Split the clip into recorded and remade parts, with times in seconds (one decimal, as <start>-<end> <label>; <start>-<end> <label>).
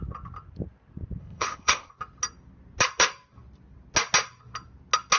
0.0-1.2 recorded; 1.2-1.9 remade; 1.9-5.2 recorded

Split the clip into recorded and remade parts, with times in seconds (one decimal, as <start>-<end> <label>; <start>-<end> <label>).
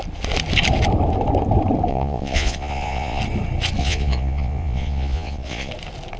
0.0-1.9 recorded; 1.9-3.2 remade; 3.2-3.8 recorded; 3.8-5.7 remade; 5.7-6.2 recorded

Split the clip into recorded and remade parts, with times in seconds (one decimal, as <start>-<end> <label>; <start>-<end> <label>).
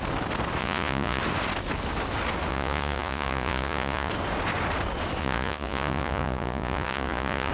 0.0-0.6 recorded; 0.6-1.2 remade; 1.2-2.5 recorded; 2.5-4.1 remade; 4.1-5.2 recorded; 5.2-7.5 remade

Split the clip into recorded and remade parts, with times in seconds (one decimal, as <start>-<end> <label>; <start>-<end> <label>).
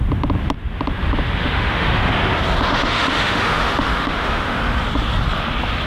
0.0-1.4 recorded; 1.4-2.1 remade; 2.1-2.7 recorded; 2.7-4.6 remade; 4.6-5.9 recorded